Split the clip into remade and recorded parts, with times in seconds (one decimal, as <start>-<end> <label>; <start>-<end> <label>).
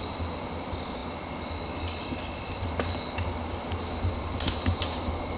0.0-5.4 recorded